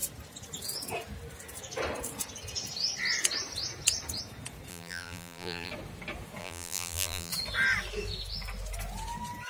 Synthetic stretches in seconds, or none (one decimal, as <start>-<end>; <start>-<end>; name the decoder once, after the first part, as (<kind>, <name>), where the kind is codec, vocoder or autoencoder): 4.7-5.7 (vocoder, BigVGAN v2); 6.4-7.3